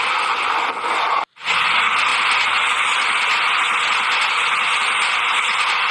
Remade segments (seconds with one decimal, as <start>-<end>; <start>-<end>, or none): none